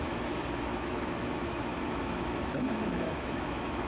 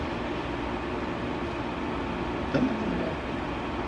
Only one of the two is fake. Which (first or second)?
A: first